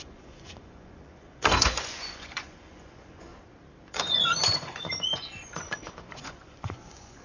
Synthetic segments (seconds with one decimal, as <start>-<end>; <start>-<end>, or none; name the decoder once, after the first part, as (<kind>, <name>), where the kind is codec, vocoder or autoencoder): 0.0-3.3 (vocoder, Vocos); 3.8-7.2